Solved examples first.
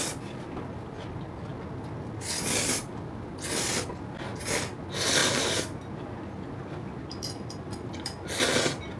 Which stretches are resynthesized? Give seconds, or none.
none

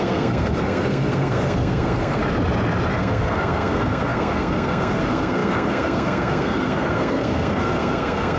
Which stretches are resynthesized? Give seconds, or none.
0.0-2.2 (codec, SNAC); 2.9-8.4